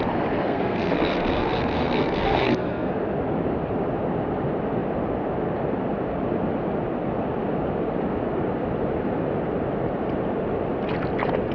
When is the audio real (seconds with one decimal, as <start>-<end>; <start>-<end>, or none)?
0.0-0.4; 2.9-11.5